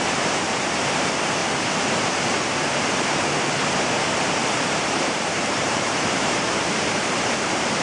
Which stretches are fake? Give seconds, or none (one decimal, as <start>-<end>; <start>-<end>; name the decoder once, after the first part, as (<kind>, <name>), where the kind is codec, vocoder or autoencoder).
0.0-1.4 (vocoder, BigVGAN v2); 4.6-7.8